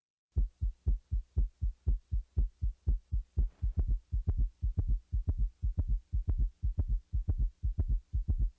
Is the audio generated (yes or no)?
no